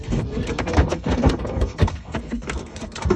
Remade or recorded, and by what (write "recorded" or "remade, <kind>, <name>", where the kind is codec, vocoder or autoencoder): remade, codec, SNAC